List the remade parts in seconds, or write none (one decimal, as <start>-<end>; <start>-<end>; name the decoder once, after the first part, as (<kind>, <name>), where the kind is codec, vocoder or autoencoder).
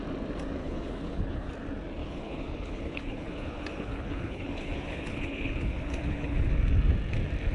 0.6-1.5 (codec, HILCodec); 2.0-6.5